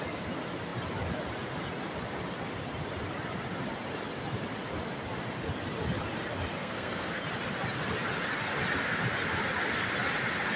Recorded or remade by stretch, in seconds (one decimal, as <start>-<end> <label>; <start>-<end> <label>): 0.0-6.6 recorded; 6.6-7.2 remade; 7.2-10.6 recorded